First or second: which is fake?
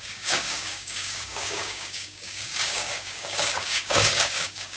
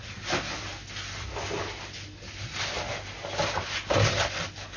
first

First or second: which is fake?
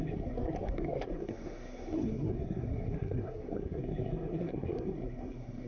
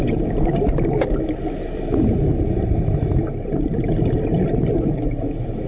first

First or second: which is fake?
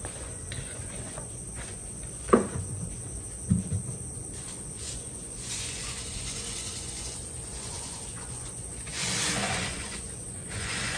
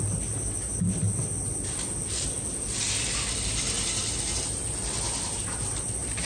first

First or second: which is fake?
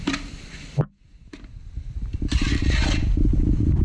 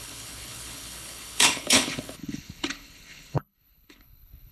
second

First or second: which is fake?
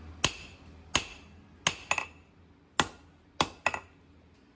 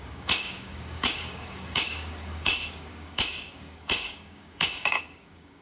second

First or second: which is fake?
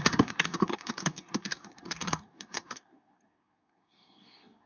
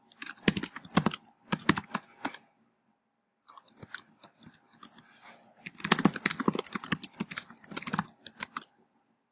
first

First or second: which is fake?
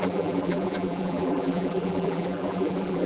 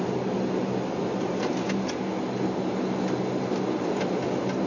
first